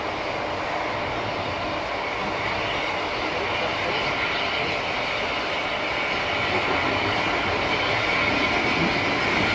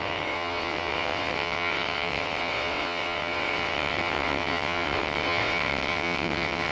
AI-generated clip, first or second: second